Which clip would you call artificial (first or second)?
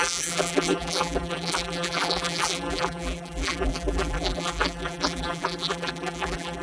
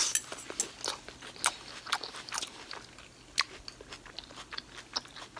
first